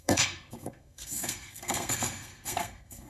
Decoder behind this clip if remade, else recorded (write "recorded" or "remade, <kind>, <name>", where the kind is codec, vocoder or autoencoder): remade, codec, SNAC